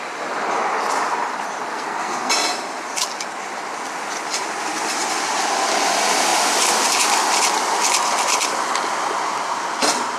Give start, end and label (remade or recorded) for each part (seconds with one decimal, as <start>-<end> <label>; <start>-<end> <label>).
0.0-1.7 recorded; 1.7-2.3 remade; 2.3-10.2 recorded